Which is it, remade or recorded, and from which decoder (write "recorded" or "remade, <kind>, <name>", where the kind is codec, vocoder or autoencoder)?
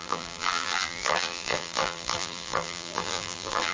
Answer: remade, vocoder, BigVGAN v2